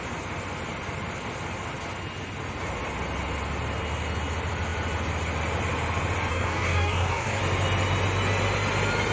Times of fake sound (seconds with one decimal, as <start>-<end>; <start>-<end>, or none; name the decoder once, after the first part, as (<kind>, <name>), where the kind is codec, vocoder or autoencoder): 6.3-7.4 (codec, DAC)